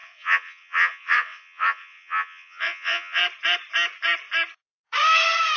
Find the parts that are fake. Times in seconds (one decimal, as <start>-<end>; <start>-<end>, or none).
0.0-3.2